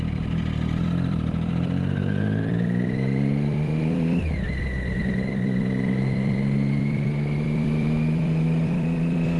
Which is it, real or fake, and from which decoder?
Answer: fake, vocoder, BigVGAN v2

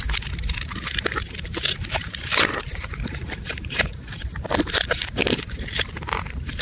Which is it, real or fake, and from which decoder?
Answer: fake, vocoder, BigVGAN v2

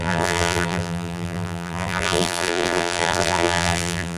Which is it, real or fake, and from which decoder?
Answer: fake, vocoder, BigVGAN v2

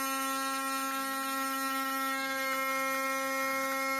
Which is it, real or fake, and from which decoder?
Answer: real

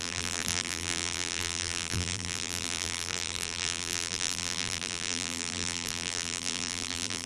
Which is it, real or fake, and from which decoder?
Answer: fake, vocoder, BigVGAN v2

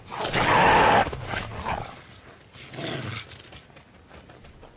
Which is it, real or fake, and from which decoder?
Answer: real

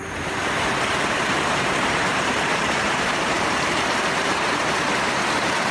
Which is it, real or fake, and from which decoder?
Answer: fake, vocoder, BigVGAN v2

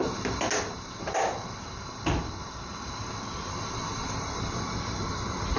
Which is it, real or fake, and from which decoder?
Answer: real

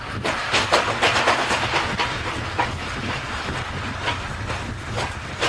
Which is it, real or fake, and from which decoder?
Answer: fake, vocoder, BigVGAN v2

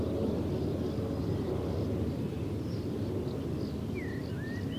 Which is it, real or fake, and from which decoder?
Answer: real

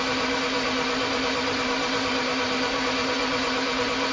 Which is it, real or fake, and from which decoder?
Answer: fake, vocoder, BigVGAN v2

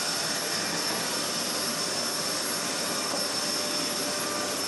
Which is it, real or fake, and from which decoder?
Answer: real